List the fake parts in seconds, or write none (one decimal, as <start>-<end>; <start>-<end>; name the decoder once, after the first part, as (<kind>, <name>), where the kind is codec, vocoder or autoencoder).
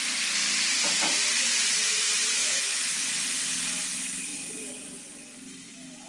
2.4-3.0 (autoencoder, DAC-VAE)